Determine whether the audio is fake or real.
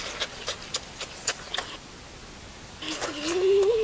real